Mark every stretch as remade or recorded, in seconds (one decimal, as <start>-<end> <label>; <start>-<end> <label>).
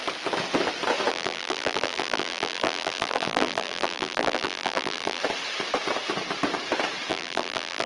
0.0-1.1 recorded; 1.1-5.2 remade; 5.2-7.1 recorded; 7.1-7.9 remade